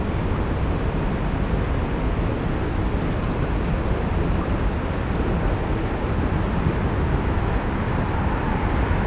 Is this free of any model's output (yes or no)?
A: yes